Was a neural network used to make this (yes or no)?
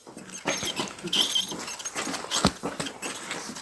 no